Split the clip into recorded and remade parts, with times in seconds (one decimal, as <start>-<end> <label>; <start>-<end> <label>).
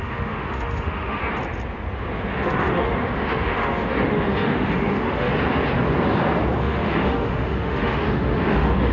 0.0-1.2 remade; 1.2-2.3 recorded; 2.3-5.3 remade; 5.3-6.6 recorded; 6.6-8.9 remade